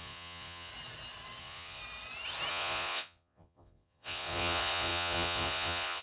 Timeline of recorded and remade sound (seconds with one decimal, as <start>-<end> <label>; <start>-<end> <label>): 0.0-0.7 remade; 0.7-1.4 recorded; 1.4-1.8 remade; 1.8-2.5 recorded; 2.5-6.0 remade